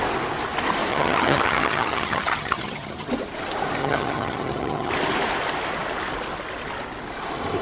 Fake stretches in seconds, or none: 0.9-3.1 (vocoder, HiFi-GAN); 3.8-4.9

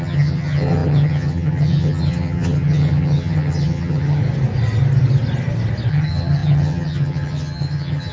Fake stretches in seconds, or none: 0.0-4.2 (vocoder, HiFi-GAN); 5.9-8.1